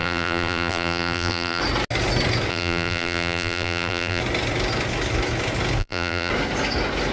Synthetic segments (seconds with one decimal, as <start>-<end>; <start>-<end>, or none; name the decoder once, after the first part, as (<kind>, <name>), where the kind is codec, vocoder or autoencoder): 0.0-1.6 (vocoder, BigVGAN v2); 2.5-4.2; 5.8-6.3